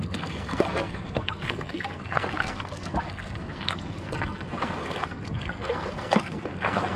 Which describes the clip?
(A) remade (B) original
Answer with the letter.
A